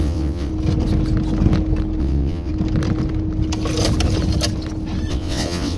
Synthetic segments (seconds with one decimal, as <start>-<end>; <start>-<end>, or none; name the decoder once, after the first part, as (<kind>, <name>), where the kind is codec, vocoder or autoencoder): 0.0-0.5 (vocoder, WaveNeXt); 2.0-2.5; 5.1-5.8

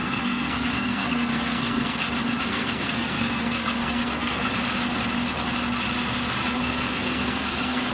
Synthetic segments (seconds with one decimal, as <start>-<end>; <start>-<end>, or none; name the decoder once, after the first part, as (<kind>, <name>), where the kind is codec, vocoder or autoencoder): 0.0-2.1 (codec, SNAC); 2.5-4.5; 6.4-7.9

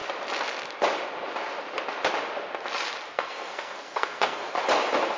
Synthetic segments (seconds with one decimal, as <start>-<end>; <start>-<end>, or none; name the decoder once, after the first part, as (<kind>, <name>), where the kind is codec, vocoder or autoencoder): 3.1-4.4 (codec, SNAC)

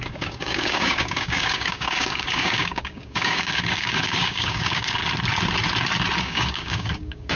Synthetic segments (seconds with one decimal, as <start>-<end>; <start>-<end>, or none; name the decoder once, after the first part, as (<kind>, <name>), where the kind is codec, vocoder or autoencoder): 0.0-5.0 (codec, DAC); 6.2-7.4

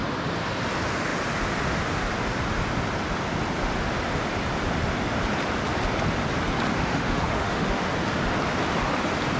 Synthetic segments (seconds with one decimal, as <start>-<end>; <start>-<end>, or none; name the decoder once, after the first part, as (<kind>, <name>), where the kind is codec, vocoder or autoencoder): 6.7-7.9 (autoencoder, DAC-VAE)

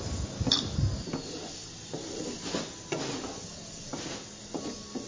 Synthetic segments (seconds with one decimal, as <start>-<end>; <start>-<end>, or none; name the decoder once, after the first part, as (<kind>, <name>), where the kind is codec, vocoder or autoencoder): none

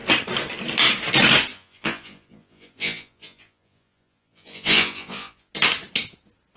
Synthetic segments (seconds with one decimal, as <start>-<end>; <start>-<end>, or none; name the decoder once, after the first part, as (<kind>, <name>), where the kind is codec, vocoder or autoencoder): 1.5-5.5 (vocoder, Vocos)

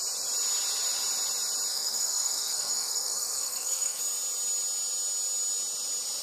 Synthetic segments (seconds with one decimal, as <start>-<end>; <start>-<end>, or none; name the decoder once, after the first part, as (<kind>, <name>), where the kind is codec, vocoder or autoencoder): 1.7-4.0 (codec, SNAC)